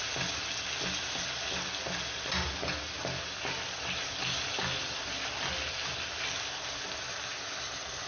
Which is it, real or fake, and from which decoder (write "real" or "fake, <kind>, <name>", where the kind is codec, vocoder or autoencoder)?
real